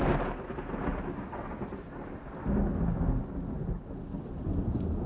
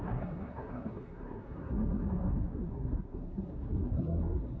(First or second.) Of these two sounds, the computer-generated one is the second